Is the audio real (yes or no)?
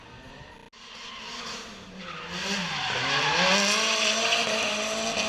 yes